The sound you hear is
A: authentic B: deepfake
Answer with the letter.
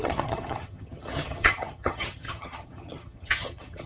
B